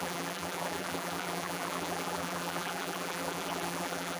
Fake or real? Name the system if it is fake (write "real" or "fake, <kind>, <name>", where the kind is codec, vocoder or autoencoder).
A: fake, vocoder, BigVGAN v2